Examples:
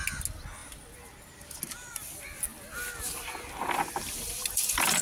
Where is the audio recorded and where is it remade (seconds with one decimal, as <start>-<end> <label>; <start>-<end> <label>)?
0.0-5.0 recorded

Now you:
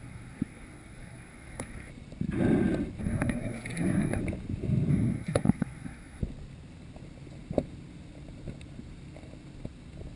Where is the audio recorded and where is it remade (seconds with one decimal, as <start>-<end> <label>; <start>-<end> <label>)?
0.0-1.9 remade; 1.9-3.0 recorded; 3.0-4.2 remade; 4.2-4.9 recorded; 4.9-6.2 remade; 6.2-10.2 recorded

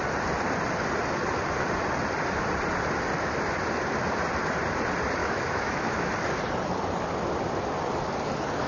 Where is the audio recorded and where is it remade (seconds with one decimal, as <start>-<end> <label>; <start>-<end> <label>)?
0.0-5.2 recorded; 5.2-6.1 remade; 6.1-8.7 recorded

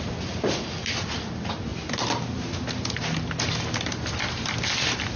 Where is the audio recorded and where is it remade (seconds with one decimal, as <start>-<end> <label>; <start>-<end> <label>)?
0.0-5.2 recorded

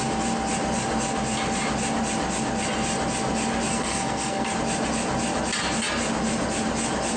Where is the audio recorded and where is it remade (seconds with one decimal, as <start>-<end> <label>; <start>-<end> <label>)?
0.0-3.7 recorded; 3.7-4.5 remade; 4.5-7.2 recorded